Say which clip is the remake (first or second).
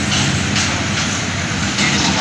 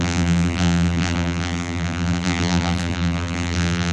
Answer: second